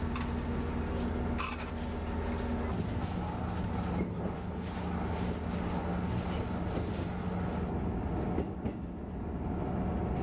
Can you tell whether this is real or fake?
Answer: real